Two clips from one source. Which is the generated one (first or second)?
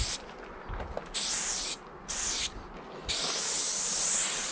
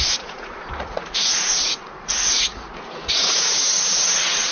second